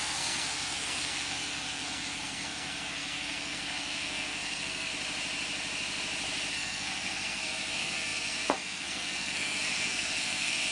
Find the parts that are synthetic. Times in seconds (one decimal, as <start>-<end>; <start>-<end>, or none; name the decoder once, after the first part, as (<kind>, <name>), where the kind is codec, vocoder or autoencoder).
0.0-4.9 (codec, SNAC); 6.5-10.7